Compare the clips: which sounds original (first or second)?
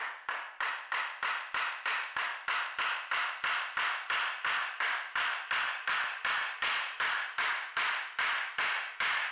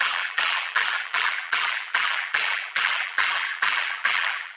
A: first